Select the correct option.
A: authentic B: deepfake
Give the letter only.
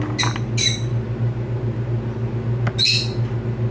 A